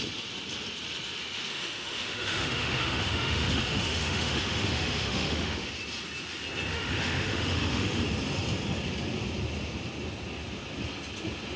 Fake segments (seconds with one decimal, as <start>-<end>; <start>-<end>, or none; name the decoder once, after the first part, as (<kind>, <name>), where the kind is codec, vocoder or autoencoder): 1.5-5.7 (autoencoder, DAC-VAE); 6.7-8.0